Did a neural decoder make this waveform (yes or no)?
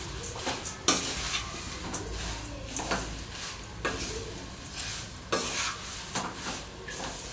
no